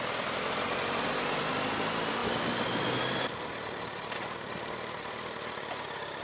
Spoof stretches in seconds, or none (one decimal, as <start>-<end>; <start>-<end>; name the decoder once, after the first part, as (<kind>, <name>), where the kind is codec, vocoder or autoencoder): none